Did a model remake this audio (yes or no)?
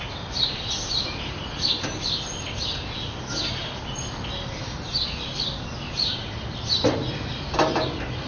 no